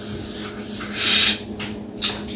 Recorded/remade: recorded